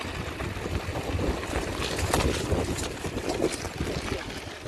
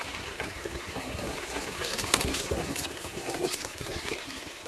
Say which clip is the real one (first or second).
first